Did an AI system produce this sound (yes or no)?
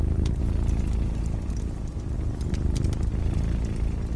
no